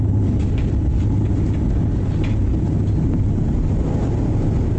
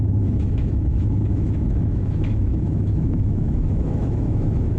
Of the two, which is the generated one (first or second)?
second